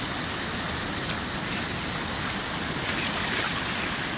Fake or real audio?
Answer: real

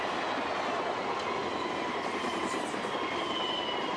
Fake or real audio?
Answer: real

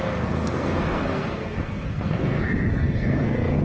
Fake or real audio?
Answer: fake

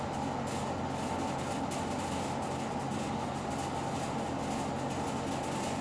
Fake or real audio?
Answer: real